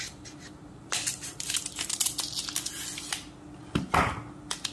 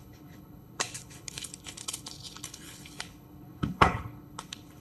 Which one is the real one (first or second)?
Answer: first